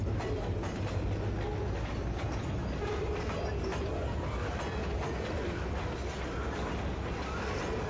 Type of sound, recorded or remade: recorded